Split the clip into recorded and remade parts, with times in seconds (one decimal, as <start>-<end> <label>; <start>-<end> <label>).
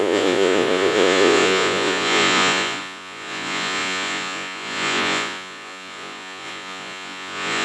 0.0-7.6 remade